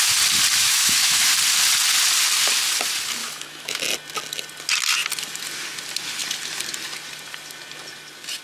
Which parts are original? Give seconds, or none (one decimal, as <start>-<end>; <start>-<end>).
0.0-0.6; 1.3-3.2; 3.8-8.4

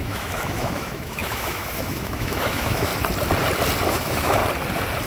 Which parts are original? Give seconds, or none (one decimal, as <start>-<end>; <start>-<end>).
2.9-3.9; 4.4-5.1

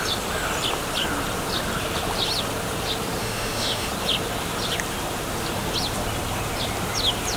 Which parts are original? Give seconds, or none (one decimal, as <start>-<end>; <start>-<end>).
0.0-3.2; 3.9-7.4

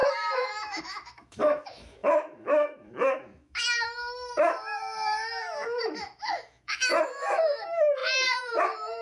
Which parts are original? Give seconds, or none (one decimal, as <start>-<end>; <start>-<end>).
none

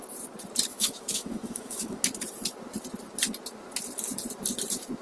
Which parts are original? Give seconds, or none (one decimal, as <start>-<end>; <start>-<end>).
0.0-0.7; 2.0-5.0

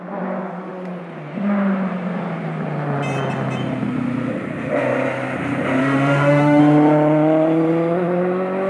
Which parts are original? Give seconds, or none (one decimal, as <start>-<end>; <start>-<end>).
0.0-5.8; 6.6-8.7

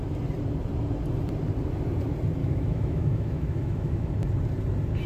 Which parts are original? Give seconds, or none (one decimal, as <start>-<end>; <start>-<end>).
0.0-2.4; 4.1-5.1